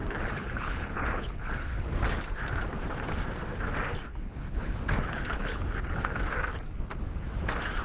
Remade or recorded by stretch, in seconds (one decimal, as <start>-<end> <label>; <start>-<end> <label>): 0.0-1.8 remade; 1.8-4.1 recorded; 4.1-6.1 remade; 6.1-7.8 recorded

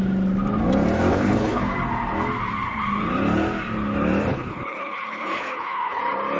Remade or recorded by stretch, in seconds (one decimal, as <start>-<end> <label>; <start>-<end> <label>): 0.0-1.1 recorded; 1.1-1.6 remade; 1.6-4.3 recorded; 4.3-6.0 remade; 6.0-6.4 recorded

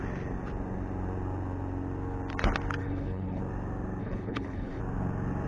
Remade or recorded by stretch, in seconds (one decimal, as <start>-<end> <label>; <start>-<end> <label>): 0.0-2.8 recorded; 2.8-3.4 remade; 3.4-4.0 recorded; 4.0-4.8 remade; 4.8-5.5 recorded

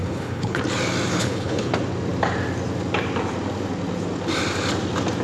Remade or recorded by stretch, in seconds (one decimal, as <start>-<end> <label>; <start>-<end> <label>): 0.0-0.6 remade; 0.6-1.1 recorded; 1.1-1.7 remade; 1.7-5.2 recorded

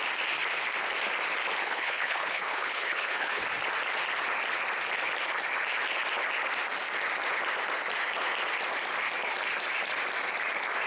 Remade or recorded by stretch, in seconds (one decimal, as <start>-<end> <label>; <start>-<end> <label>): 0.0-1.6 recorded; 1.6-3.4 remade; 3.4-10.9 recorded

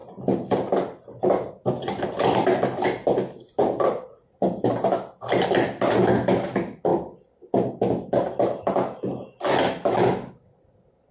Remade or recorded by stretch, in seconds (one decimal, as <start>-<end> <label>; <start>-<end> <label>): 0.0-11.1 recorded